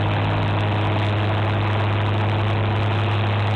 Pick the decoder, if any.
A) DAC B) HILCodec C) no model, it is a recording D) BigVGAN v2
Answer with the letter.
C